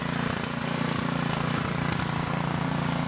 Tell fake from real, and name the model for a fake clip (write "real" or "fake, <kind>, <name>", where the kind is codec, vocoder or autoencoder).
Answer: real